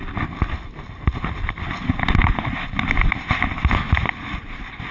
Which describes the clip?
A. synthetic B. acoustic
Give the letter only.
B